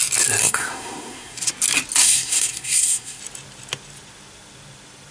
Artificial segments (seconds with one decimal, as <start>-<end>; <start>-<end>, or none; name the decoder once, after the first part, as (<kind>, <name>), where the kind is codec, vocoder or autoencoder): 0.4-1.5 (codec, SNAC); 2.0-3.2